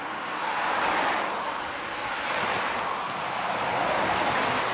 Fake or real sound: real